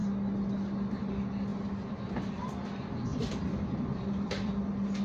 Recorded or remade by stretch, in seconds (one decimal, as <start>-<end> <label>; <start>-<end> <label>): 0.0-3.1 recorded; 3.1-4.5 remade; 4.5-5.0 recorded